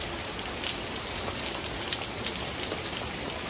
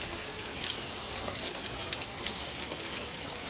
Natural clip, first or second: first